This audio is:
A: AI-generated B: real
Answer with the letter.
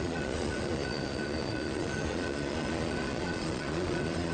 A